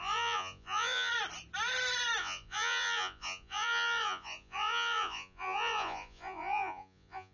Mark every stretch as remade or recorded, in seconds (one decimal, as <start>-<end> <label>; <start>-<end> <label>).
0.0-1.1 remade; 1.1-2.2 recorded; 2.2-7.3 remade